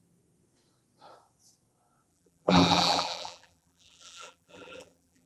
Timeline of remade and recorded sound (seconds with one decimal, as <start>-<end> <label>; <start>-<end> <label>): 0.0-2.1 recorded; 2.1-5.3 remade